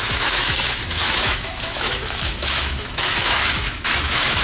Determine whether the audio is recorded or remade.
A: remade